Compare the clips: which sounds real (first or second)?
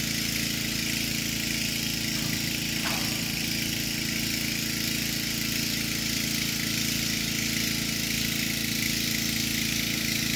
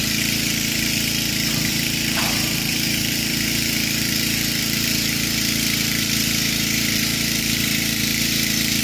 first